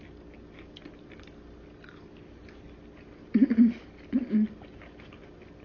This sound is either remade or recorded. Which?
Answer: recorded